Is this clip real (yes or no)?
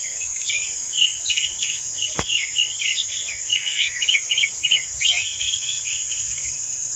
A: no